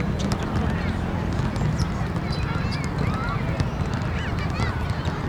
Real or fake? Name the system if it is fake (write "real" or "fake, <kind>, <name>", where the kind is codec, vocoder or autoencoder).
real